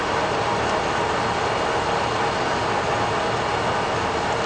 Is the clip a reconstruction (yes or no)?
no